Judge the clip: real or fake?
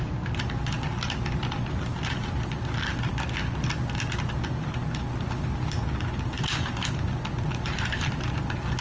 real